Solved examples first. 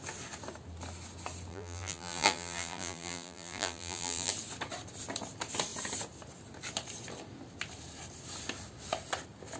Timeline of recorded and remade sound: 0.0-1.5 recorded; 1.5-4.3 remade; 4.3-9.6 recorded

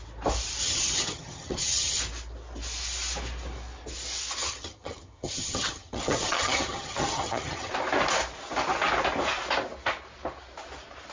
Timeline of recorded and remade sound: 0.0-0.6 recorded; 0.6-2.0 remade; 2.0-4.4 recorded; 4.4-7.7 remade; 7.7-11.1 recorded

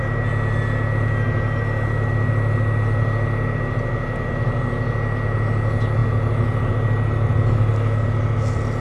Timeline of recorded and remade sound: 0.0-8.8 recorded

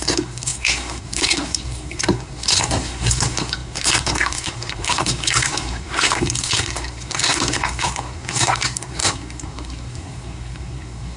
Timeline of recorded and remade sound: 0.0-11.2 remade

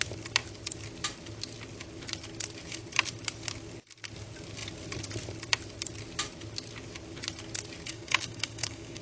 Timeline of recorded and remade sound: 0.0-7.9 recorded; 7.9-9.0 remade